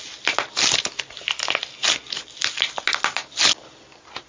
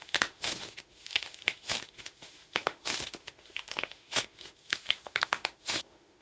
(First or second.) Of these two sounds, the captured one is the first